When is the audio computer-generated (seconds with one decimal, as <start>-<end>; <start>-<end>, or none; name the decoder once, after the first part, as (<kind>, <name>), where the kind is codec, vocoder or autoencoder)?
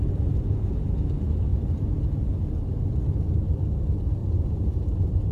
4.2-5.3 (vocoder, BigVGAN v2)